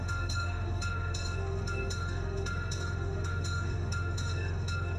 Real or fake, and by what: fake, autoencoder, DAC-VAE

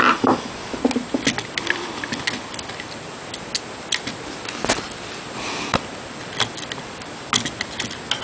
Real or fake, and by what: real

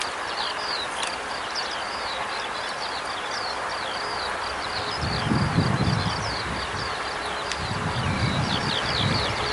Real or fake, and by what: real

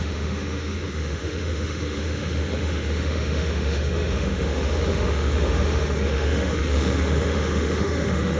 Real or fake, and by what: fake, autoencoder, DAC-VAE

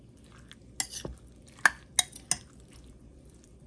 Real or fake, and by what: real